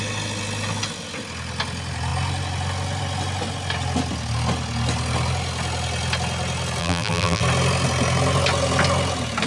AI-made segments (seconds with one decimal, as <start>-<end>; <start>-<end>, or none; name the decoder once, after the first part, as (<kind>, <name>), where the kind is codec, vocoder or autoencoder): 6.8-7.4 (vocoder, BigVGAN v2)

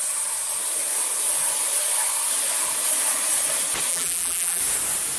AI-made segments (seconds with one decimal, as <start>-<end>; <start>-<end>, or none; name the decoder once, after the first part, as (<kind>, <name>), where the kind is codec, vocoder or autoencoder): 3.9-4.6 (vocoder, BigVGAN v2)

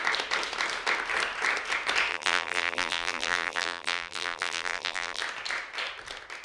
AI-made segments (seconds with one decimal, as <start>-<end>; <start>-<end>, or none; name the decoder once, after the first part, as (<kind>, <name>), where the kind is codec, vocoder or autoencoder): 2.1-5.2 (vocoder, BigVGAN v2)

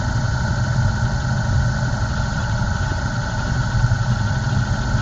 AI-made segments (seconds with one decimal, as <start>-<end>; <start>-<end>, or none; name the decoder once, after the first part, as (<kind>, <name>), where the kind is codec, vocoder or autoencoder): 2.4-4.6 (vocoder, BigVGAN v2)

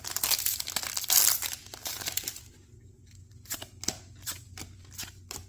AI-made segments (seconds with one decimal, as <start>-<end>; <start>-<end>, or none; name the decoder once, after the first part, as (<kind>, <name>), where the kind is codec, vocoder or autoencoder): 1.8-2.5 (vocoder, BigVGAN v2)

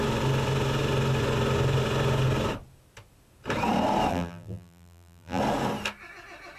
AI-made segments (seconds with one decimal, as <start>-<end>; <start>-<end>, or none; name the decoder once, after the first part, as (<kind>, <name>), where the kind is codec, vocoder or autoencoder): 4.1-5.4 (vocoder, BigVGAN v2)